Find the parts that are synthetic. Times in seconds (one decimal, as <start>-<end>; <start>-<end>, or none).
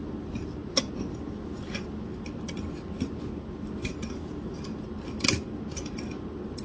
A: none